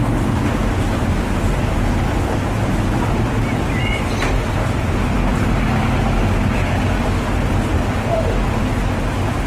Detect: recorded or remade recorded